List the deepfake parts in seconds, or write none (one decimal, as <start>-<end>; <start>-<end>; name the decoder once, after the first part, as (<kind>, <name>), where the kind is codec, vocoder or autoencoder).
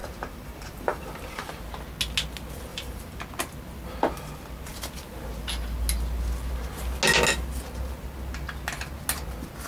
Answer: 0.0-1.6 (vocoder, BigVGAN v2); 2.7-3.2